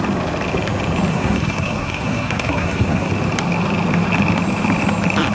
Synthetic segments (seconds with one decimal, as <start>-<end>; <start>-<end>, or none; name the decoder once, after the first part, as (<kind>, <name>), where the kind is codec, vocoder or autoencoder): 1.1-3.1 (codec, SNAC)